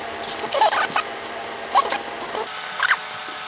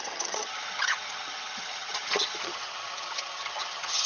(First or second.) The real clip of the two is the first